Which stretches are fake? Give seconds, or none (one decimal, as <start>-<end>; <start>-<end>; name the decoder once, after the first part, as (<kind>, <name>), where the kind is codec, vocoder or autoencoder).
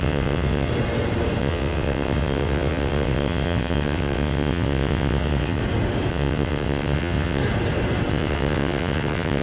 0.0-0.7 (vocoder, WaveNeXt); 1.4-5.6; 6.1-7.4; 8.1-9.4